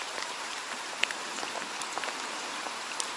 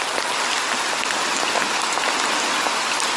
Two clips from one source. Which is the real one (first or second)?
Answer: second